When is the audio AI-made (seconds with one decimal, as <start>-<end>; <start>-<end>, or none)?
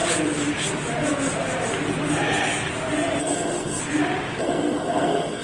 3.2-3.8; 4.4-5.4